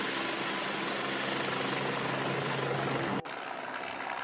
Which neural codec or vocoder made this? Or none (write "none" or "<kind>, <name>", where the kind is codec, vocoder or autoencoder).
none